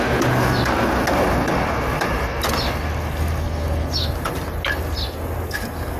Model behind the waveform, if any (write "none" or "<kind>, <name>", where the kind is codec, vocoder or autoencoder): none